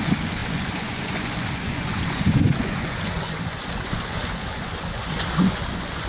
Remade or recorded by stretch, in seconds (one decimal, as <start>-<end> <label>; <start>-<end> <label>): 0.0-6.1 remade

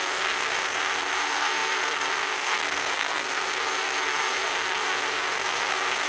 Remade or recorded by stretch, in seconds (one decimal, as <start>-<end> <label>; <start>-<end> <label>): 0.0-6.1 remade

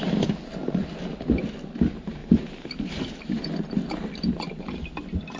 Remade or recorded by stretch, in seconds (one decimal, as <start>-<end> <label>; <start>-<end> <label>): 0.0-5.4 recorded